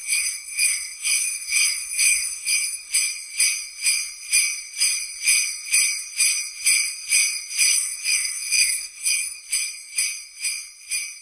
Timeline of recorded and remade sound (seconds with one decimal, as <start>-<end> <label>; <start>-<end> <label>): 0.0-2.9 remade; 2.9-7.7 recorded; 7.7-9.4 remade; 9.4-11.2 recorded